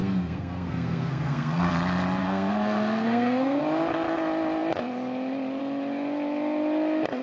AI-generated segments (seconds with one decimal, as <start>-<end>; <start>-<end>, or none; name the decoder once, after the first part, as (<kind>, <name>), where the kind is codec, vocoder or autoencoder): 0.0-1.7 (codec, SNAC); 2.2-3.6